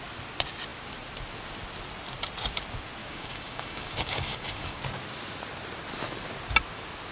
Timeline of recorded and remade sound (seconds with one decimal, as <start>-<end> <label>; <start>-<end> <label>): 0.0-3.0 recorded; 3.0-4.8 remade; 4.8-7.1 recorded